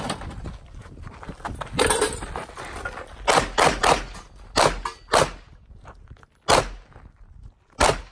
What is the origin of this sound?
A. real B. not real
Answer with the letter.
A